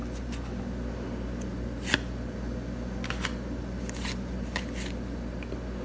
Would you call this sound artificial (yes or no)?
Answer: no